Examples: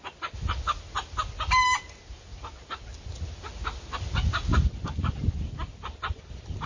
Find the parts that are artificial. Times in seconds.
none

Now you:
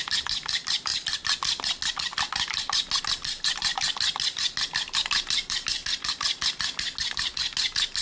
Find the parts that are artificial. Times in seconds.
none

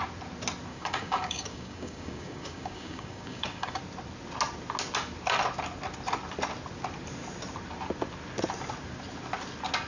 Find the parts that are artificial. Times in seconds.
0.7-3.8 (codec, DAC)

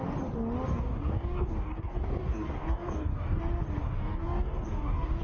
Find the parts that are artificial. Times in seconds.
0.7-3.4 (codec, DAC); 3.8-5.2

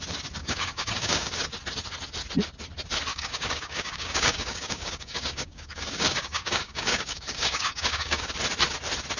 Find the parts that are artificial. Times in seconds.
0.4-1.3 (codec, DAC); 3.1-8.3

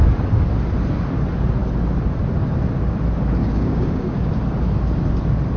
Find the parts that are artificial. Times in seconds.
3.4-4.3 (codec, DAC)

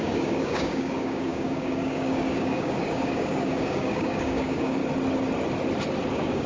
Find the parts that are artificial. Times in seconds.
0.0-4.8 (codec, DAC); 6.1-6.5